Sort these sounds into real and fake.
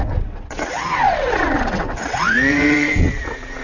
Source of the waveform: fake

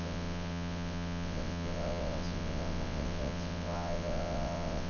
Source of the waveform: fake